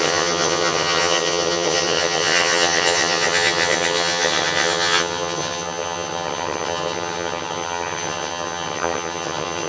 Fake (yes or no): yes